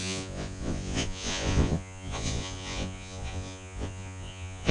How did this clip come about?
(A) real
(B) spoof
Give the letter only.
B